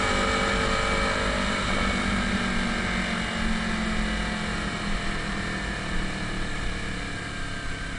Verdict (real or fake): real